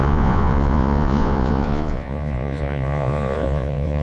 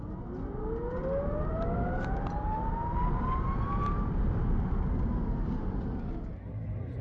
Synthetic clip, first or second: first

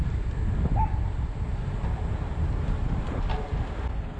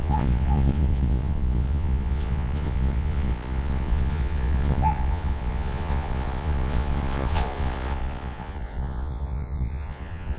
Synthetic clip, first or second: second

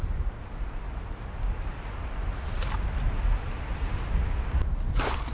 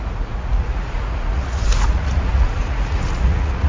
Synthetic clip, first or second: second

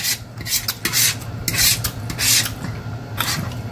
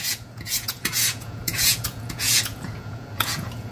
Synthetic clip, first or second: second